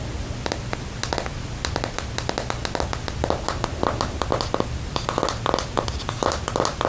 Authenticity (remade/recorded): recorded